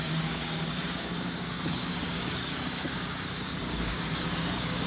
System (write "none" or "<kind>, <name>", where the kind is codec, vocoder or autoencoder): codec, DAC